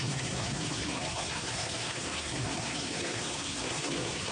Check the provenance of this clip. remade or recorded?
remade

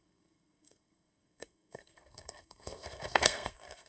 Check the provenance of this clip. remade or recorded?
remade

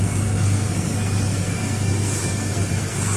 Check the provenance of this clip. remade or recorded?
remade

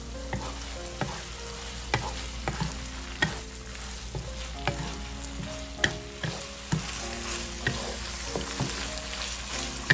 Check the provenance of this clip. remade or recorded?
recorded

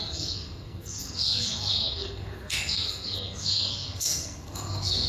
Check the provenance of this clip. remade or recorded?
remade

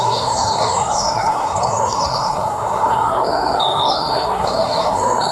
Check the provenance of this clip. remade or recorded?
remade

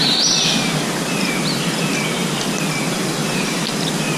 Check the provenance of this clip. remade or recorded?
recorded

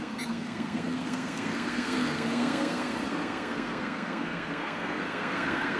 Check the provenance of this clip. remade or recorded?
remade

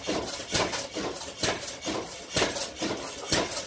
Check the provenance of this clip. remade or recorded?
recorded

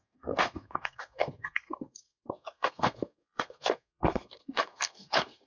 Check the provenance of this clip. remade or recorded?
remade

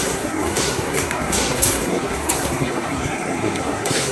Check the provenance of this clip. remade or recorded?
remade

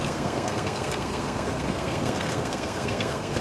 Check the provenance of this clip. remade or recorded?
remade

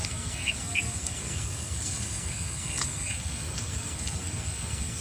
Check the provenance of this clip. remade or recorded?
remade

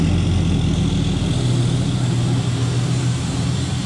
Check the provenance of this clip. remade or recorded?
recorded